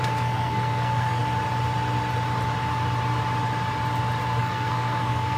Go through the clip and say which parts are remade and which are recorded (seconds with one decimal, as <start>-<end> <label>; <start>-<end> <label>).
0.0-1.2 remade; 1.2-4.4 recorded; 4.4-5.4 remade